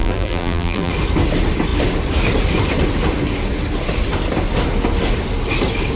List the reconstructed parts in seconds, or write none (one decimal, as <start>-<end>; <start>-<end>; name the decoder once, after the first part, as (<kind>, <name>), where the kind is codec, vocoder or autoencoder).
0.0-0.9 (vocoder, BigVGAN v2)